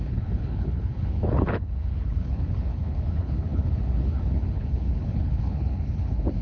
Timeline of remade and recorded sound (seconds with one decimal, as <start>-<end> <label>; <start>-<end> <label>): 0.0-6.4 remade